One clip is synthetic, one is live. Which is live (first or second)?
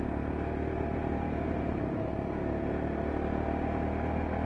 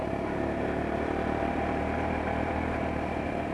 first